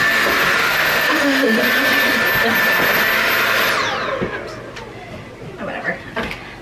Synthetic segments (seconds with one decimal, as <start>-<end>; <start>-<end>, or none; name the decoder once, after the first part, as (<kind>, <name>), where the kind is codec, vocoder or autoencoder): 0.6-1.6 (autoencoder, DAC-VAE)